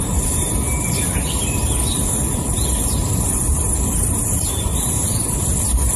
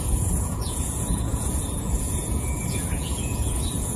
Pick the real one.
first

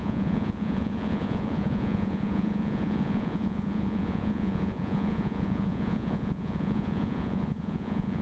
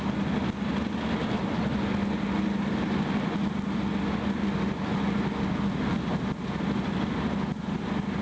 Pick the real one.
second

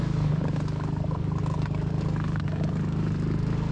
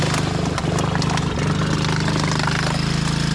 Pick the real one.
second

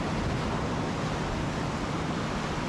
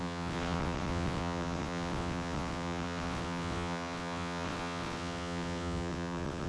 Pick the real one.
first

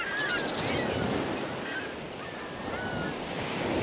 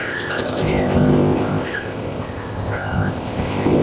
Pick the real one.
first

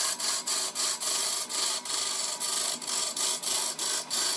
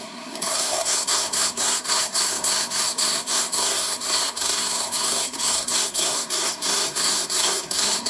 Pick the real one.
first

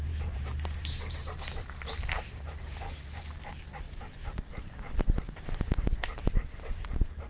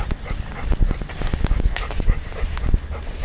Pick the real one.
second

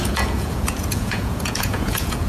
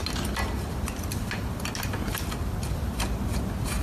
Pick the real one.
second